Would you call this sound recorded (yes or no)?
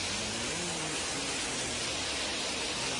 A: yes